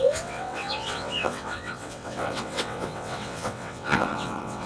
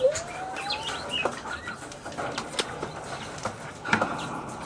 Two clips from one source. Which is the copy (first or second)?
first